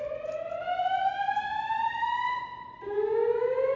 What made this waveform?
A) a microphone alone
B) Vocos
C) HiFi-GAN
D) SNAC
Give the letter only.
A